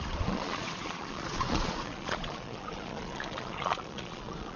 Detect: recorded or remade remade